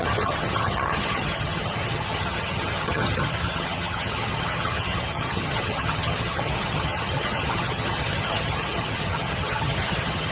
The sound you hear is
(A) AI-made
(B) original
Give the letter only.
A